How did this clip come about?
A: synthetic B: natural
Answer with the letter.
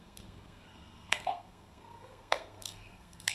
A